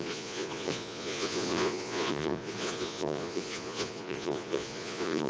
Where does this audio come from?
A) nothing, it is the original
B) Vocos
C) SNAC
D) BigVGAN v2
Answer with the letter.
B